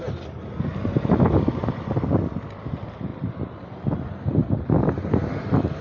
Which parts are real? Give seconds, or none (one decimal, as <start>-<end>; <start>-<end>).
0.0-5.8